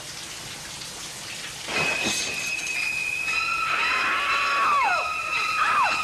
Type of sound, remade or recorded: recorded